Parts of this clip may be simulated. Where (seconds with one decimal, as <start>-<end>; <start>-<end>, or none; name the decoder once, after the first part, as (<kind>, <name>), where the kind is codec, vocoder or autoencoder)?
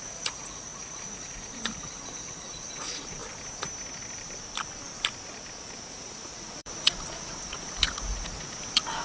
0.0-3.2 (vocoder, Vocos); 5.9-9.0